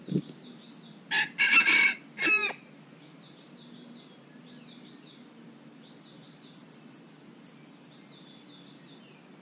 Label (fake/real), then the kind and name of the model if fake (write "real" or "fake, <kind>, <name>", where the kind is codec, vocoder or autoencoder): real